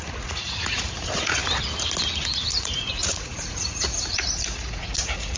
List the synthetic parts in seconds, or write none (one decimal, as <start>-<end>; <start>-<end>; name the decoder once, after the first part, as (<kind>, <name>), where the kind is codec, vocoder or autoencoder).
0.0-1.4 (vocoder, Vocos); 2.6-5.4